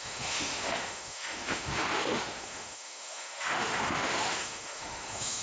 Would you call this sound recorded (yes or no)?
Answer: no